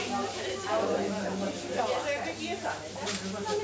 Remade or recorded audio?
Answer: recorded